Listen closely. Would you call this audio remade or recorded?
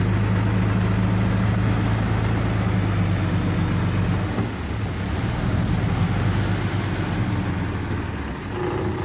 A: recorded